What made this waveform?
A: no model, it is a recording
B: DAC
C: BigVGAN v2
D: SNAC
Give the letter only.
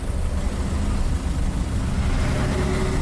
A